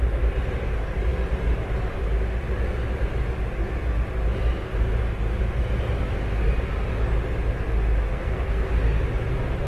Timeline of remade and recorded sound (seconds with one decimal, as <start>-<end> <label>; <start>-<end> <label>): 0.0-8.1 recorded; 8.1-8.7 remade; 8.7-9.7 recorded